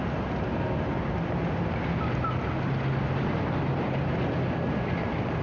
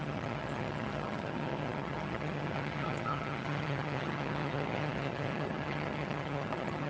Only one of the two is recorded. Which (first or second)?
first